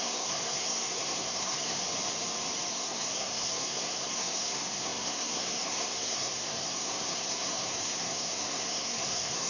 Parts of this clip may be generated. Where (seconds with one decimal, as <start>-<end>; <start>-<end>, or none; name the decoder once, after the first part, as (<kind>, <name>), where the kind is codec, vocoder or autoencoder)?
0.0-1.8 (codec, SNAC); 2.7-9.5